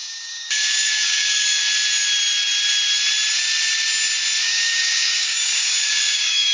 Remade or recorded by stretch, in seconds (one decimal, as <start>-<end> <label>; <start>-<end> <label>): 0.0-1.6 remade; 1.6-4.4 recorded; 4.4-6.5 remade